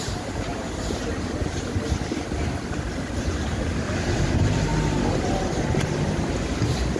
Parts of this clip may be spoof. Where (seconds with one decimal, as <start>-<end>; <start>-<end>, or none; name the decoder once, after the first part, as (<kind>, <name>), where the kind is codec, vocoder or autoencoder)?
0.0-0.5 (vocoder, BigVGAN v2); 3.1-4.7; 5.6-7.0